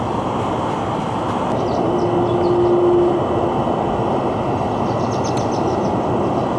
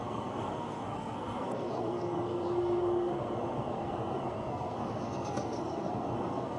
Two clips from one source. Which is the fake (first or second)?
second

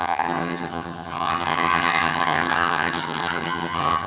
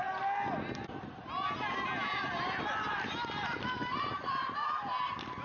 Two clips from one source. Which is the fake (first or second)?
first